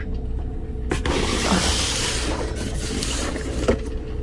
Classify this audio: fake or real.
real